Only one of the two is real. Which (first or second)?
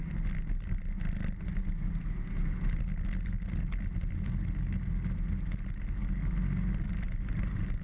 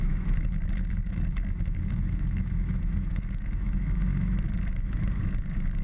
first